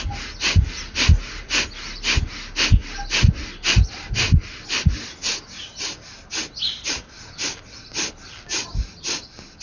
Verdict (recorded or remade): recorded